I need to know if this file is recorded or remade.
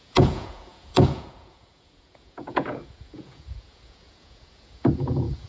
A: remade